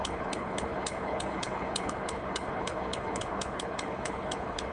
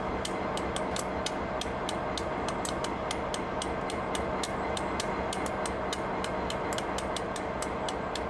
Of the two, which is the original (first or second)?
second